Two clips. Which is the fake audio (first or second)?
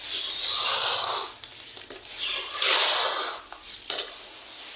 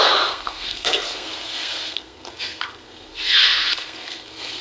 second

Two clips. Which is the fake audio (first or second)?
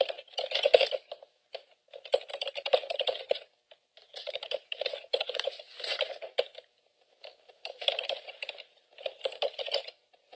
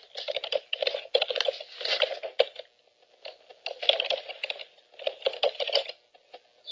first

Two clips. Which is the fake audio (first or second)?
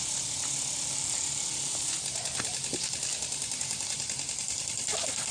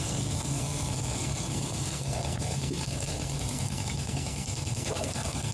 second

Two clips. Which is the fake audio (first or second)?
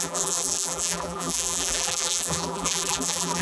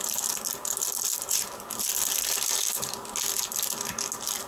first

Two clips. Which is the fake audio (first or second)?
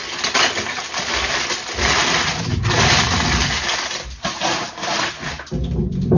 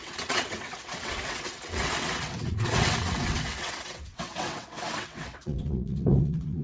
second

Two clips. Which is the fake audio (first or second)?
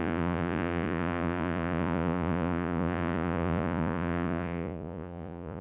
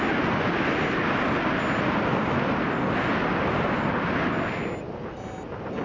first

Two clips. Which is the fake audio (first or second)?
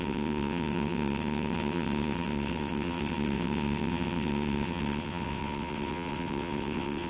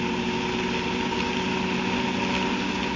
first